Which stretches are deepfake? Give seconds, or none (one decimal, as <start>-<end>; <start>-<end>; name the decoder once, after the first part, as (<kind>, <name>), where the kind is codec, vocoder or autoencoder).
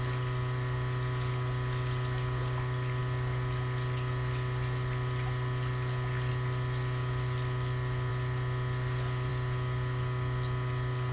none